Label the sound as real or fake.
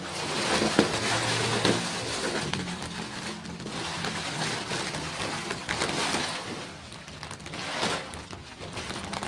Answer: real